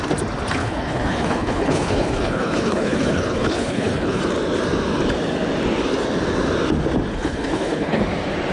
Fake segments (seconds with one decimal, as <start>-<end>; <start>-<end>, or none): 0.6-4.2; 7.1-8.0